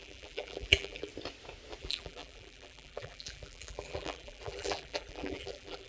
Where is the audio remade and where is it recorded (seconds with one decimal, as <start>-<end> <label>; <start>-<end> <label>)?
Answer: 0.0-1.1 remade; 1.1-1.8 recorded; 1.8-5.9 remade